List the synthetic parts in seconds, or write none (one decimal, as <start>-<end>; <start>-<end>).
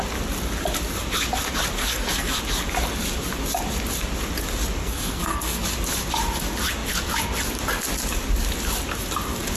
1.8-2.4; 4.8-5.6